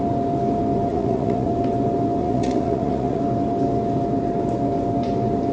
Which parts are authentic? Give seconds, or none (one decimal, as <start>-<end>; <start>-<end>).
0.0-0.9; 1.5-2.2; 3.2-5.5